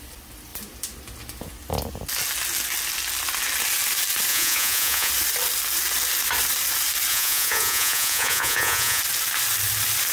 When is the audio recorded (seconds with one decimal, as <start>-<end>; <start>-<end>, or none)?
0.0-4.3; 5.1-7.1; 9.0-10.1